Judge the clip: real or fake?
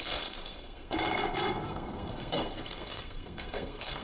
fake